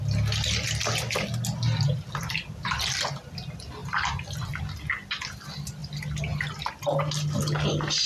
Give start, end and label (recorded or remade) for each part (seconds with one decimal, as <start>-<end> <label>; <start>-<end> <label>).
0.0-8.1 recorded